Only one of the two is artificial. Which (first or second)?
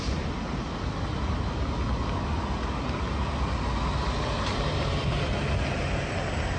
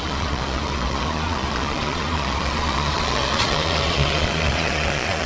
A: second